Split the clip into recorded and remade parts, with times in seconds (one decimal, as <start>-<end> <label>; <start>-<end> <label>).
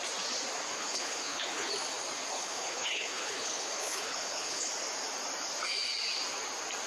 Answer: 0.0-0.7 recorded; 0.7-1.7 remade; 1.7-2.3 recorded; 2.3-4.7 remade; 4.7-6.9 recorded